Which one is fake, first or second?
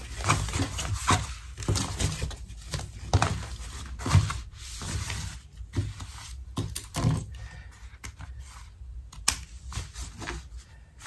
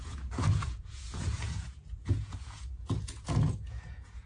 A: second